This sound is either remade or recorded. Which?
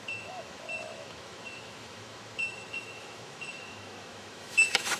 remade